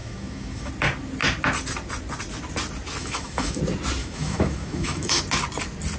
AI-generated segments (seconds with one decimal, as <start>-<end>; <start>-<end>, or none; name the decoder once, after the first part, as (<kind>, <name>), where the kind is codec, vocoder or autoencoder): 0.0-0.7 (autoencoder, DAC-VAE); 3.0-3.6; 4.0-5.2